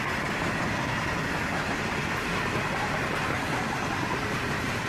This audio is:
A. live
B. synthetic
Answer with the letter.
A